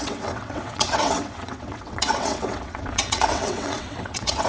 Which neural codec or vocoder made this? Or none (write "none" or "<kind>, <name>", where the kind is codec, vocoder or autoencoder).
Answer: vocoder, WaveNeXt